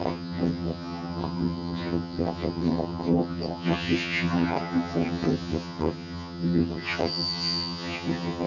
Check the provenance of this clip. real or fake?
fake